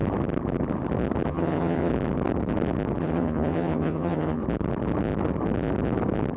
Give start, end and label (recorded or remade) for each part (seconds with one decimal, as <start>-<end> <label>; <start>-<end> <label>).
0.0-1.3 recorded; 1.3-1.9 remade; 1.9-3.0 recorded; 3.0-4.4 remade; 4.4-6.4 recorded